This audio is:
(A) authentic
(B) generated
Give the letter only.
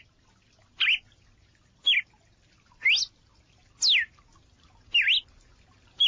A